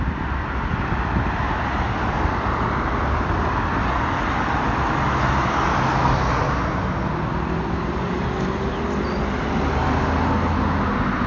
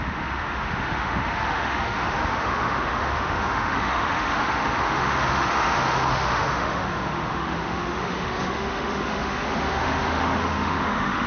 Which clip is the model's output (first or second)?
second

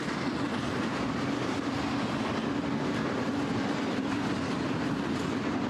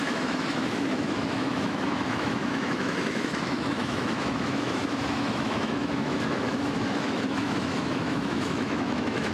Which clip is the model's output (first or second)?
second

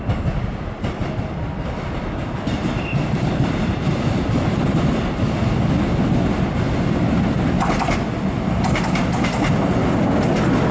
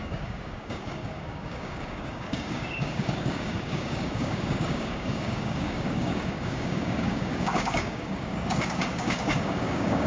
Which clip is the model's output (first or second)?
second